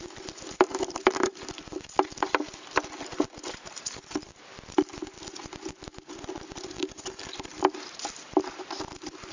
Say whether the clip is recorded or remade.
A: remade